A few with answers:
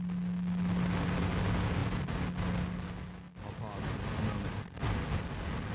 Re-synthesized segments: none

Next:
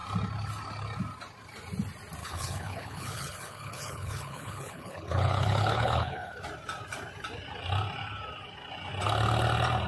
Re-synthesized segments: 2.2-6.4

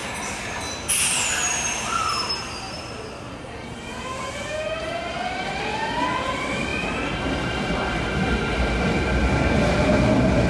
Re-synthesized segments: none

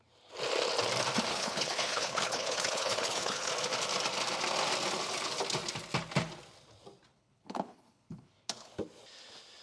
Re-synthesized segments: 1.3-3.5; 7.1-8.7

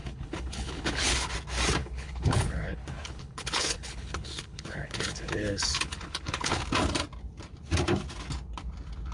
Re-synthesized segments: 0.0-1.3; 1.8-6.6

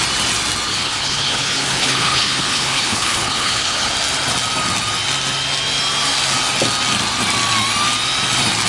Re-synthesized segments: 0.7-3.9

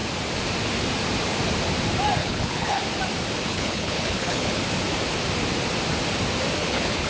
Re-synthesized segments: 2.2-2.8; 3.5-4.6; 6.6-7.1

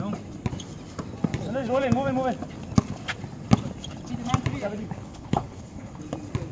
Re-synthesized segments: 4.8-6.0